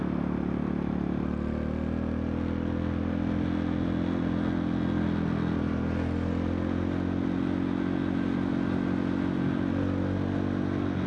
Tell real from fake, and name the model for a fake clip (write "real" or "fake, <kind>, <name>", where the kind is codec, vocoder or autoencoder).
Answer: real